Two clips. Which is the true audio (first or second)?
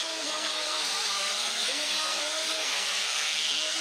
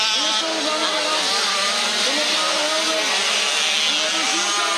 second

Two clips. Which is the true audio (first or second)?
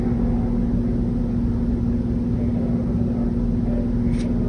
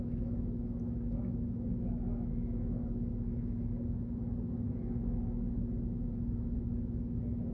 first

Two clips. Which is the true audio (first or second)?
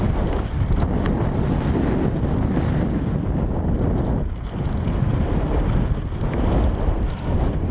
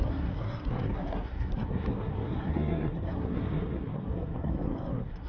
first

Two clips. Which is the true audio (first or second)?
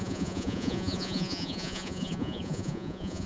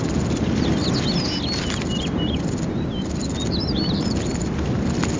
second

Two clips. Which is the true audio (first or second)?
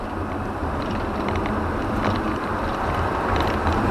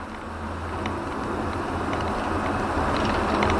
second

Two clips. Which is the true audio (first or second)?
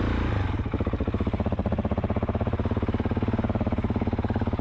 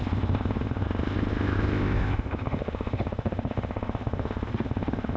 first